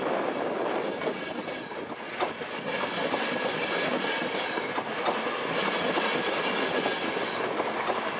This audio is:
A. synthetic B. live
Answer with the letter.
B